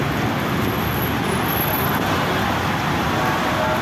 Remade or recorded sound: recorded